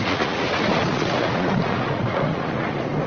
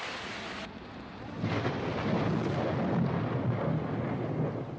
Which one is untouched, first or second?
second